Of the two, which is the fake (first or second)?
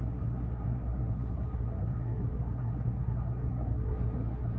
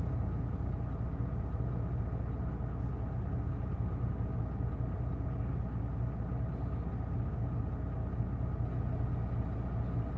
first